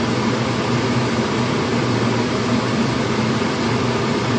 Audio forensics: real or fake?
real